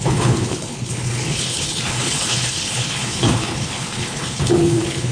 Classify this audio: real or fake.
fake